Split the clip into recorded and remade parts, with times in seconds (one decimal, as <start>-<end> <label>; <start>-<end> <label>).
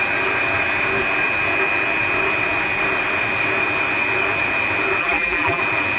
0.0-5.0 recorded; 5.0-5.6 remade; 5.6-6.0 recorded